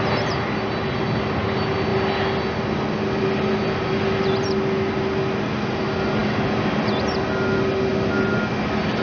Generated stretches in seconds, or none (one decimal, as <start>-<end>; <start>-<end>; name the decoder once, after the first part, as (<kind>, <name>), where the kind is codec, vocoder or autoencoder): none